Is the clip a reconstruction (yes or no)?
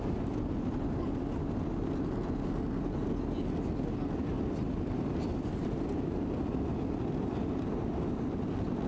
no